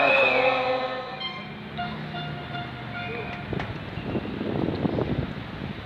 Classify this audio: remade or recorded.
recorded